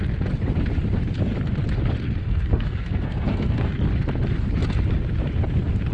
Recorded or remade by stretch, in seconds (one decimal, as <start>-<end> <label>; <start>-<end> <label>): 0.0-2.2 recorded; 2.2-3.7 remade; 3.7-5.9 recorded